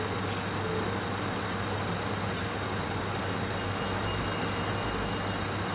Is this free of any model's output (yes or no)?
yes